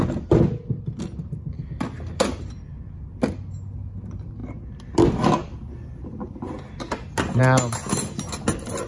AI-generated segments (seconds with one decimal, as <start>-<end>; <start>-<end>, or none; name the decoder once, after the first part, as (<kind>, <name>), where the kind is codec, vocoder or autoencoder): none